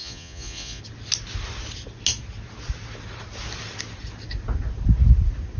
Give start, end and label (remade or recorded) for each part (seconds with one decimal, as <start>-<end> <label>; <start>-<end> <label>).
0.0-0.8 remade; 0.8-5.6 recorded